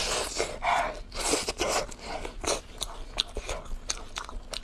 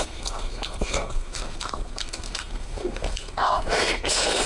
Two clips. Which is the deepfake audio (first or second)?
second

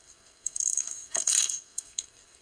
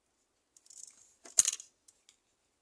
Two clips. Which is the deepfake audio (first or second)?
first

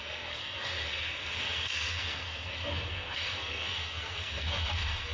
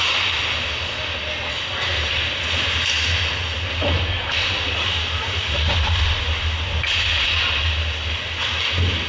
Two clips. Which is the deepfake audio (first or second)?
first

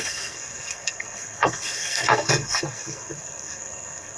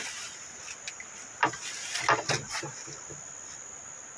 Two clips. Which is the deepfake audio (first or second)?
first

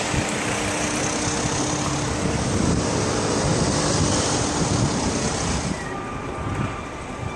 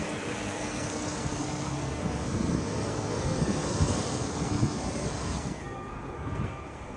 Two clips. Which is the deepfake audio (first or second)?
second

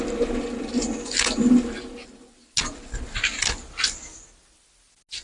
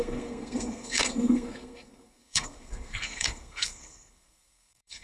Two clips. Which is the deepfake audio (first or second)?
second